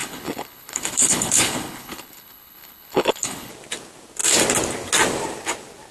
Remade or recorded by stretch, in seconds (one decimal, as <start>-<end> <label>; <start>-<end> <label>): 0.0-3.5 remade; 3.5-5.9 recorded